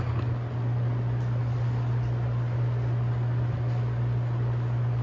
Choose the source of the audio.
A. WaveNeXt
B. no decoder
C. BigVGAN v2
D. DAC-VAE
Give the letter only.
B